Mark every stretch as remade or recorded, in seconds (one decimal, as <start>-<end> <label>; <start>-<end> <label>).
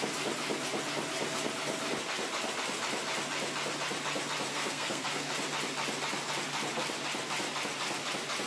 0.0-4.5 recorded; 4.5-5.3 remade; 5.3-8.5 recorded